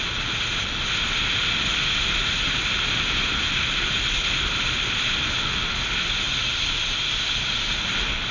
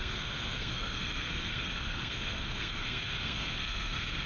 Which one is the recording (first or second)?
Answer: first